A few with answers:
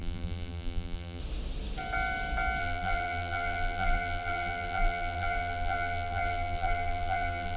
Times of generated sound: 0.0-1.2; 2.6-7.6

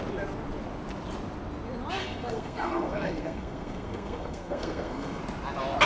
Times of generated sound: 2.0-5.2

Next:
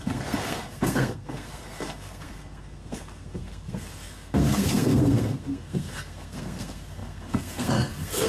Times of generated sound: 0.0-8.3

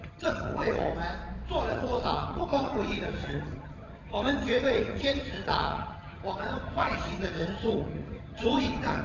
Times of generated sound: 0.0-0.9; 1.7-9.0